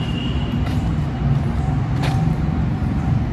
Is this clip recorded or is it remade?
remade